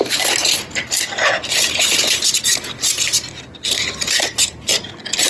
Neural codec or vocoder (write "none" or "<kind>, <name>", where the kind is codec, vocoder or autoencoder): none